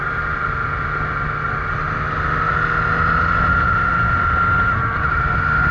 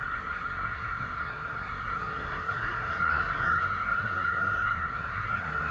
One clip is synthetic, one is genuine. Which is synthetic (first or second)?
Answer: second